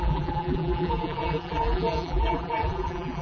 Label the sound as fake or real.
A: fake